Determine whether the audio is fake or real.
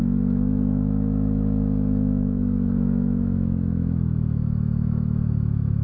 fake